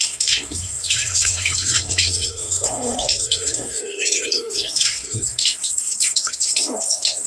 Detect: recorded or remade remade